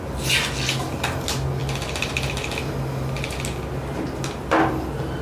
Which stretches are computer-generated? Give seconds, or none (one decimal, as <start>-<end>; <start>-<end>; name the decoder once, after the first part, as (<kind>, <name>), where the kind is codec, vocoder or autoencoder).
none